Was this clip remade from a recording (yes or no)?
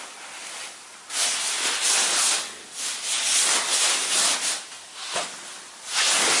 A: no